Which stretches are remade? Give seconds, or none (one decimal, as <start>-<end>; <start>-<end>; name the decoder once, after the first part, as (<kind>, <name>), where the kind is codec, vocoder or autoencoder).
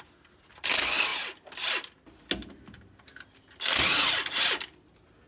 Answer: none